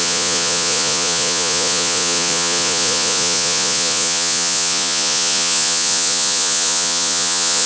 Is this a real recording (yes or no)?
no